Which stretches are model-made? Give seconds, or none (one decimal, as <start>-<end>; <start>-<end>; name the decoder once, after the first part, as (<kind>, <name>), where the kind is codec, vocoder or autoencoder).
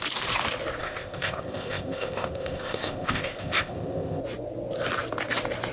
0.8-4.2 (codec, ZipCodec)